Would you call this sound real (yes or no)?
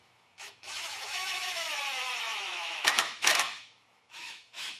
no